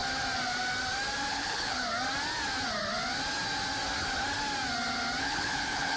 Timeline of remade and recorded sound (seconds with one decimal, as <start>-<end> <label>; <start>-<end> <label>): 0.0-1.3 recorded; 1.3-1.8 remade; 1.8-5.2 recorded; 5.2-6.0 remade